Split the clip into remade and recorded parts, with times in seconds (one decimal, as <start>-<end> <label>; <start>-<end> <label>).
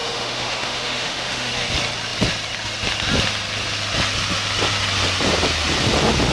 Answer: 0.0-1.5 remade; 1.5-6.3 recorded